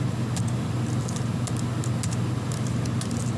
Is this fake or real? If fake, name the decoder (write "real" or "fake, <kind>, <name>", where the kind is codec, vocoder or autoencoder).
real